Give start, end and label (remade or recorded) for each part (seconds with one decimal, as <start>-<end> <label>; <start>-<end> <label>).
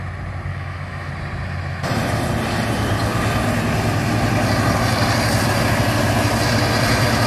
0.0-0.5 recorded; 0.5-1.1 remade; 1.1-7.3 recorded